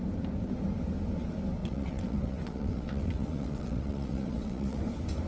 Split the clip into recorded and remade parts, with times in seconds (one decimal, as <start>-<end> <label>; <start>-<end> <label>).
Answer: 0.0-1.6 recorded; 1.6-4.8 remade; 4.8-5.3 recorded